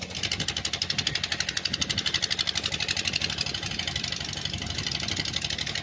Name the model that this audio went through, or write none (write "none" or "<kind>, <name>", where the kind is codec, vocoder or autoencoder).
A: none